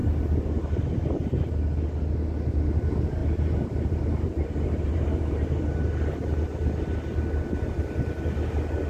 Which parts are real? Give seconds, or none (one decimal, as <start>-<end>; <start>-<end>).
0.0-3.2; 5.6-8.9